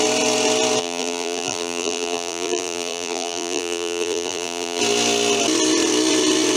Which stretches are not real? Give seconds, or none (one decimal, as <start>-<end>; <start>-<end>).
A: 0.8-4.8